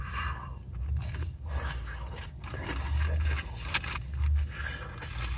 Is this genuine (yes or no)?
yes